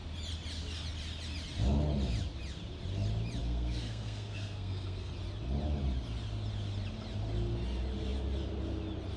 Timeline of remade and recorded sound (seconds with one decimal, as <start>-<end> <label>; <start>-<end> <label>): 0.0-3.4 recorded; 3.4-5.1 remade; 5.1-9.2 recorded